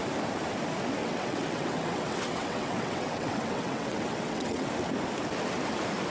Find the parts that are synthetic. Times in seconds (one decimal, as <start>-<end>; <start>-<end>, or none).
1.0-4.7